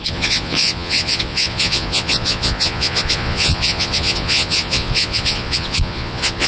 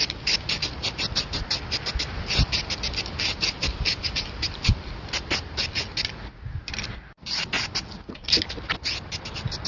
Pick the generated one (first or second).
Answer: first